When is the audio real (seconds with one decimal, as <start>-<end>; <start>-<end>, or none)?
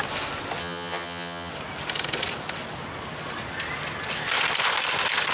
0.0-0.6; 1.5-5.3